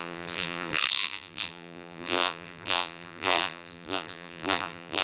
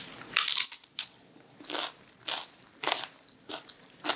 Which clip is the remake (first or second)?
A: first